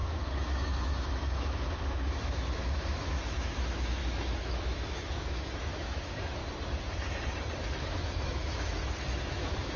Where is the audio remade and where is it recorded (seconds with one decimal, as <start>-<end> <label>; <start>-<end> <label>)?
0.0-6.4 remade; 6.4-7.7 recorded; 7.7-8.8 remade; 8.8-9.3 recorded; 9.3-9.8 remade